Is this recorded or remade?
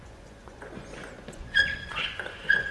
remade